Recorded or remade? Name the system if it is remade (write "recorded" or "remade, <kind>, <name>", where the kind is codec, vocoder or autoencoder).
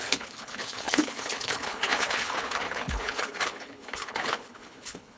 remade, codec, HILCodec